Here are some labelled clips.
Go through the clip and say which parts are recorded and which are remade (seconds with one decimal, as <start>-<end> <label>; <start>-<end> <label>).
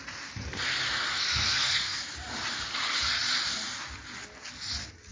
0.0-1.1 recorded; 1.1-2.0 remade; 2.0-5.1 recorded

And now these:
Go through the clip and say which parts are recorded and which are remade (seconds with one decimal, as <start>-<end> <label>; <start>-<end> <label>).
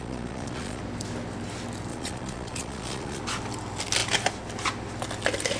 0.0-0.8 remade; 0.8-1.9 recorded; 1.9-3.2 remade; 3.2-5.6 recorded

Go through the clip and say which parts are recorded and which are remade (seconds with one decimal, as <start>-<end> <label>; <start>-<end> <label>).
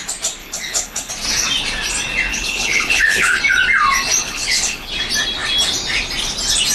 0.0-0.4 recorded; 0.4-1.1 remade; 1.1-2.3 recorded; 2.3-3.4 remade; 3.4-4.2 recorded; 4.2-4.9 remade; 4.9-6.7 recorded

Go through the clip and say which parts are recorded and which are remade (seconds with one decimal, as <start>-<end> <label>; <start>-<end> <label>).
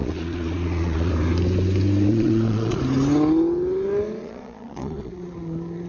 0.0-1.1 remade; 1.1-2.1 recorded; 2.1-2.8 remade; 2.8-4.2 recorded; 4.2-5.1 remade; 5.1-5.9 recorded